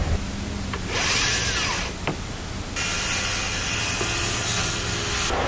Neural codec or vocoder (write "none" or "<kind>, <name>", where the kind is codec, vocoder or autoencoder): none